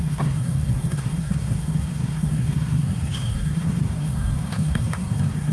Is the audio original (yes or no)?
no